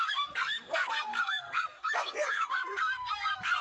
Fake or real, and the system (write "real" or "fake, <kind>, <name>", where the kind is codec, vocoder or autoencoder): fake, codec, SNAC